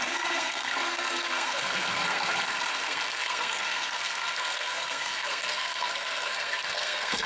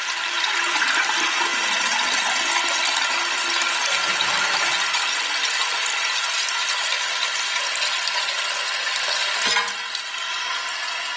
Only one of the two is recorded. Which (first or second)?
second